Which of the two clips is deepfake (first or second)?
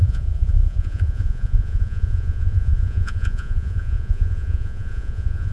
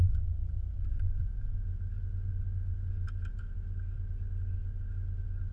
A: first